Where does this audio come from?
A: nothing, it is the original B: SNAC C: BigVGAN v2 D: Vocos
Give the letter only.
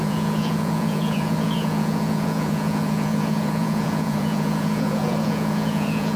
D